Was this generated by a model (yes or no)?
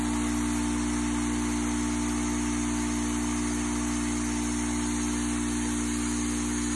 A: no